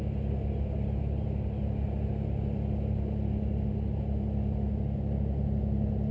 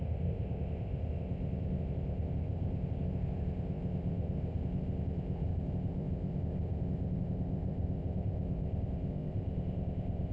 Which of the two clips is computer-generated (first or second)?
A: second